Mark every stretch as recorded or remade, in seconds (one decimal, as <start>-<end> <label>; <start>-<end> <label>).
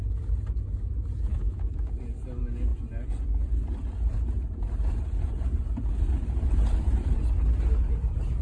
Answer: 0.0-1.3 recorded; 1.3-1.9 remade; 1.9-8.4 recorded